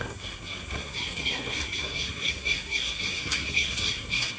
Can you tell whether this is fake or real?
fake